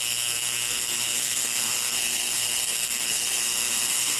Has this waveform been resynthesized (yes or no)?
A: yes